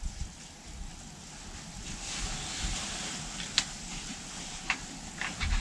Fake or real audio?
real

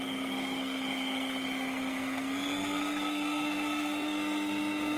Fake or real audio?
fake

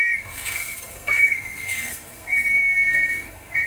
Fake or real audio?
fake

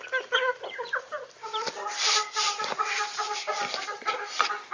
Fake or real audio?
real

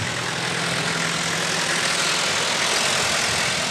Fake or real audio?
real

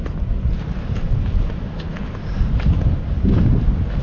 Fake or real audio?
real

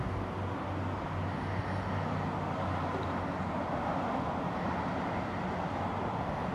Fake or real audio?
real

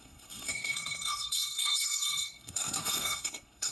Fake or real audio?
fake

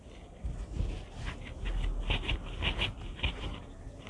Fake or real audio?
real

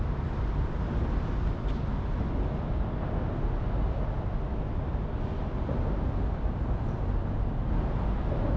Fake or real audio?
real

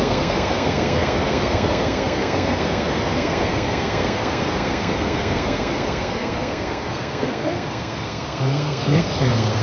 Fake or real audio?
fake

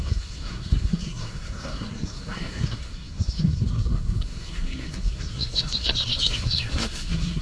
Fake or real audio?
fake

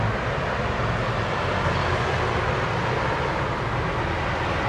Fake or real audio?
real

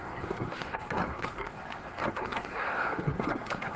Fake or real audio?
fake